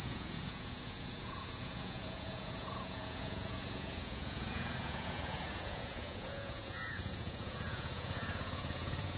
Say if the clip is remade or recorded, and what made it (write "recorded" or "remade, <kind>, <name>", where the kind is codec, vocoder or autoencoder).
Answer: remade, vocoder, Vocos